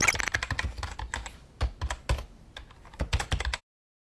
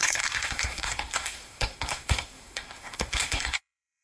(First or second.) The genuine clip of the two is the first